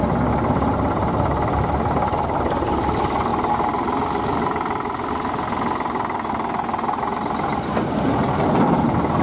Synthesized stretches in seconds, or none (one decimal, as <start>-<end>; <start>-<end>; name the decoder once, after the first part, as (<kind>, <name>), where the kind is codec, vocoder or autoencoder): none

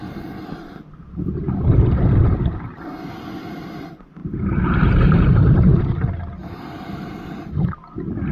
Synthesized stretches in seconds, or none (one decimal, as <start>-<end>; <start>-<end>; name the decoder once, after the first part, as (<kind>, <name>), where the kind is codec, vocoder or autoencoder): 4.2-5.8 (vocoder, BigVGAN v2)

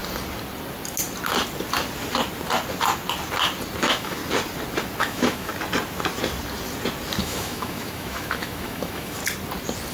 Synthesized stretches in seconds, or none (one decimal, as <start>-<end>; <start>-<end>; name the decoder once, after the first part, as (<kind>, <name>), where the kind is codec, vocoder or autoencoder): 3.8-4.2 (autoencoder, DAC-VAE); 5.0-5.5; 7.2-9.2

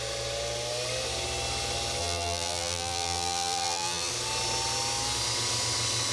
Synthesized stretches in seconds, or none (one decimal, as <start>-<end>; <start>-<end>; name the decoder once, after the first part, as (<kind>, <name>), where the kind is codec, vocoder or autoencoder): 2.0-4.1 (vocoder, BigVGAN v2)

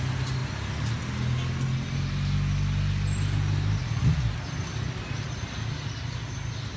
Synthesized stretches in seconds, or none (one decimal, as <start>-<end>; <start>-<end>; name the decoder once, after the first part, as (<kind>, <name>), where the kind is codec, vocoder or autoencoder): none